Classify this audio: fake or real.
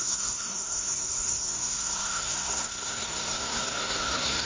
fake